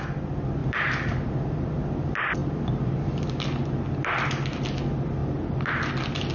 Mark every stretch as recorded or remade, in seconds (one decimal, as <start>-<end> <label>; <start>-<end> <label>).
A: 0.0-0.6 recorded; 0.6-1.7 remade; 1.7-2.4 recorded; 2.4-2.9 remade; 2.9-5.2 recorded; 5.2-5.7 remade; 5.7-6.3 recorded